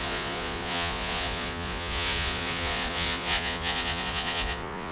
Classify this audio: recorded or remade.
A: remade